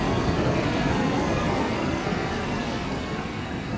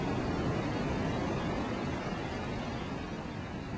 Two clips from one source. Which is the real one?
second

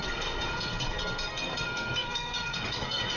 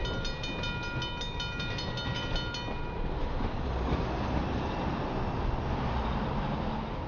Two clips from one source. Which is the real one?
second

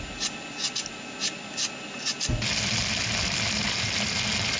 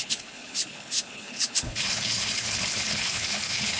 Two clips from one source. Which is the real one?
first